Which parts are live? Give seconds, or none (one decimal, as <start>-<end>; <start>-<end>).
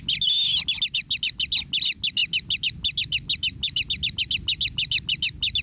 0.0-5.6